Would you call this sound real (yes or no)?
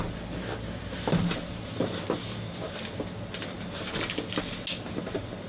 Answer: yes